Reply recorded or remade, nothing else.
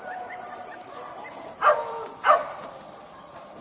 remade